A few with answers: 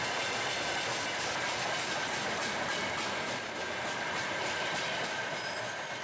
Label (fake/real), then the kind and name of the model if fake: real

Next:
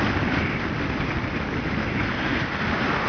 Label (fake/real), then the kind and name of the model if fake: real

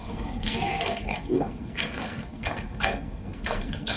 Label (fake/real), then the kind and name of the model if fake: fake, codec, SNAC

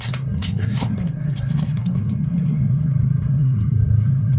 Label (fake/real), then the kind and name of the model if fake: fake, codec, SNAC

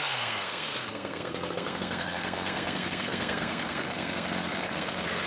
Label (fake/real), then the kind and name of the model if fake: fake, codec, SNAC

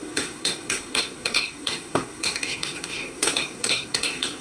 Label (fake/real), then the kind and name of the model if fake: fake, codec, SNAC